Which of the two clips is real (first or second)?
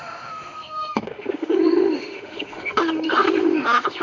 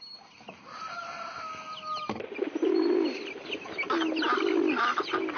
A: second